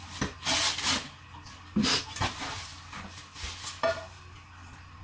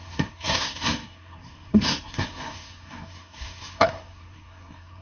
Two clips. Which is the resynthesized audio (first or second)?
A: second